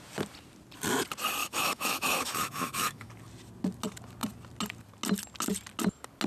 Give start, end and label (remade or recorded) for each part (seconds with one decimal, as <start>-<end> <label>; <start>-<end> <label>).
0.0-1.4 recorded; 1.4-3.1 remade; 3.1-6.3 recorded